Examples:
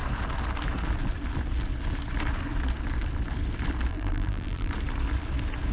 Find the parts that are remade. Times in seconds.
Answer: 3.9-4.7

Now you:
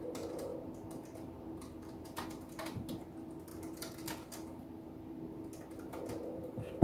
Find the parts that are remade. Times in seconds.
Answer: 0.5-2.9; 3.5-5.4

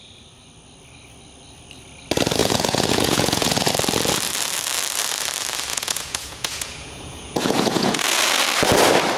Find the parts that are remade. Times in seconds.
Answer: 2.4-3.7; 5.7-8.0

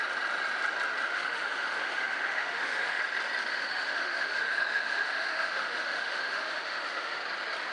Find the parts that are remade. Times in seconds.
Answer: 1.1-3.0; 3.5-7.2

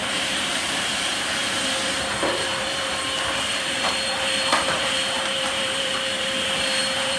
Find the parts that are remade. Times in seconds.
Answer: 0.0-7.2